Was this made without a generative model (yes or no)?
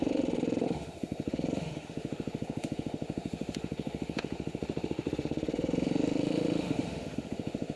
no